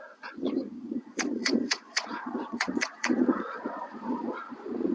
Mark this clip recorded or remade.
remade